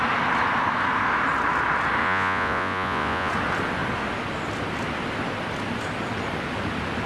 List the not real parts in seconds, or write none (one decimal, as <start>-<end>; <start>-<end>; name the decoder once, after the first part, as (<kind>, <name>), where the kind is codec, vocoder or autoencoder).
2.0-3.3 (vocoder, Vocos)